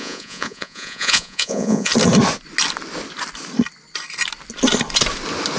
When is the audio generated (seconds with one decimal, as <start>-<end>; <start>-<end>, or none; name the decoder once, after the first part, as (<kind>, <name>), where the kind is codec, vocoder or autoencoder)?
0.0-1.9 (vocoder, Vocos)